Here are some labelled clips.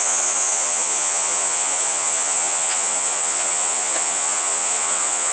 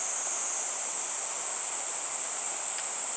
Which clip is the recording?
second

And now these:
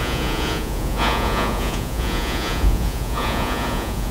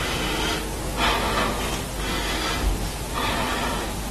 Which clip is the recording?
second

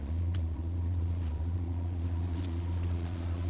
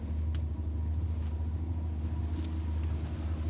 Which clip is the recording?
second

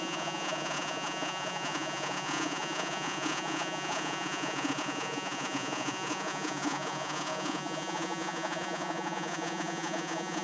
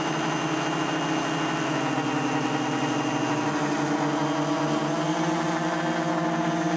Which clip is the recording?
second